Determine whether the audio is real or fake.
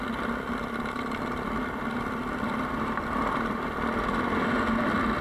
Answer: fake